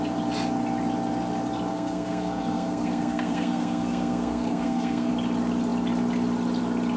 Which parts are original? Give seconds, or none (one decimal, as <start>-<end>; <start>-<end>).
0.0-1.7; 5.1-7.0

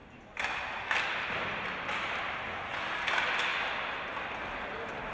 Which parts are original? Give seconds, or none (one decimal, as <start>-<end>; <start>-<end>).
0.0-5.1

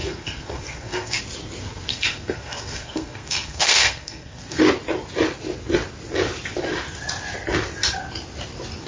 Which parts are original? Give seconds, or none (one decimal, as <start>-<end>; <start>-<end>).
1.2-1.6; 4.6-8.9

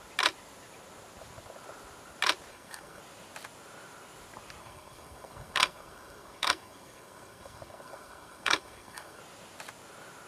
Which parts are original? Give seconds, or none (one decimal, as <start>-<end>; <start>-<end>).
0.0-2.5; 3.0-4.6; 9.2-10.3

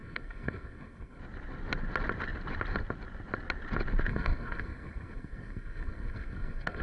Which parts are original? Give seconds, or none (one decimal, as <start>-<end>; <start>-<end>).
1.2-4.1

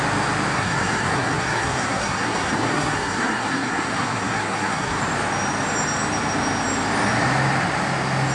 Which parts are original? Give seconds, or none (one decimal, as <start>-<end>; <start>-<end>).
0.0-0.5; 5.0-8.3